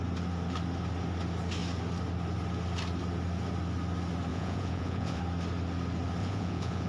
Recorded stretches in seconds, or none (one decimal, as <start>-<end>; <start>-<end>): 0.0-4.3; 5.2-6.2